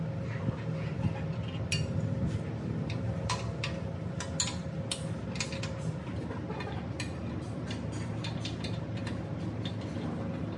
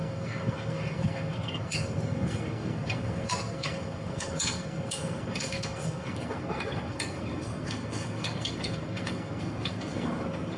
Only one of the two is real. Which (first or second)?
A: first